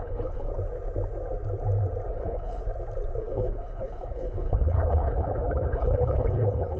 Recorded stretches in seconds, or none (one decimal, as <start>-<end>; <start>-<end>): 0.5-2.1; 2.6-3.2

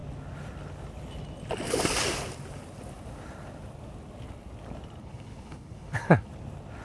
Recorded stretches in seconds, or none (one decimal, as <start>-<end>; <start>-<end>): 0.0-5.0; 6.3-6.8

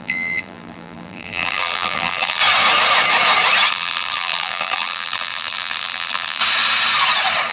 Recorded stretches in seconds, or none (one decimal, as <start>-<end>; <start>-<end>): 2.4-3.7; 6.4-7.5

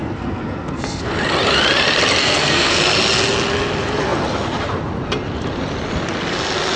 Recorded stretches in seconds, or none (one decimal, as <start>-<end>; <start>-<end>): 1.1-2.2; 2.8-6.8

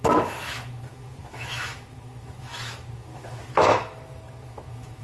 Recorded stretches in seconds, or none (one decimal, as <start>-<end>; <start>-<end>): none